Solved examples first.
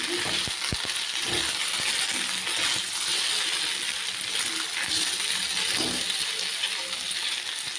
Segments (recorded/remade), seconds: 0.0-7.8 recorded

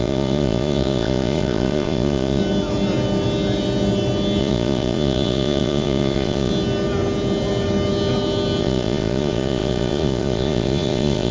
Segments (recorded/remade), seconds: 0.0-2.4 remade; 2.4-4.4 recorded; 4.4-6.5 remade; 6.5-8.6 recorded; 8.6-11.3 remade

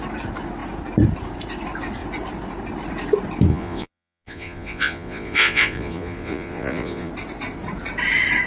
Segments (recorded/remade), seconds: 0.0-3.5 recorded; 3.5-7.1 remade; 7.1-8.5 recorded

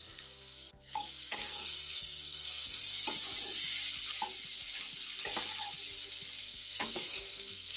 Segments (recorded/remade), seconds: 0.0-2.8 remade; 2.8-6.4 recorded; 6.4-7.8 remade